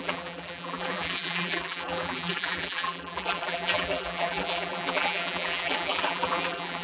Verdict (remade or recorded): remade